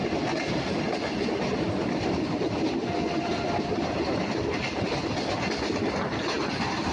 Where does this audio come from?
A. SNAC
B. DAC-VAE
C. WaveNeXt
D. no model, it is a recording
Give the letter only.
D